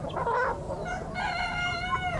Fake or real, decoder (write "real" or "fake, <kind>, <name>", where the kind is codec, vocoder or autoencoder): real